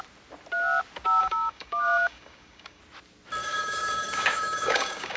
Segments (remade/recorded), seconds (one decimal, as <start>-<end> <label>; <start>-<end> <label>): 0.0-1.2 recorded; 1.2-2.8 remade; 2.8-3.4 recorded; 3.4-5.2 remade